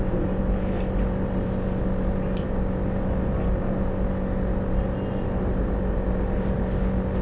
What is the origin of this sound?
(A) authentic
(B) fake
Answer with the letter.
A